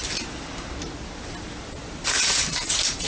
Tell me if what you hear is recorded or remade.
recorded